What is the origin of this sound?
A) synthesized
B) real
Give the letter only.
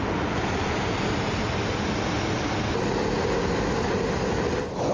B